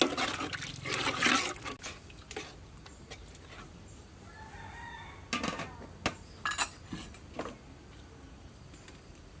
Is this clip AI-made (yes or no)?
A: no